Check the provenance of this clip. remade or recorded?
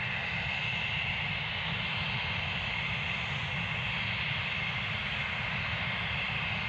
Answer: recorded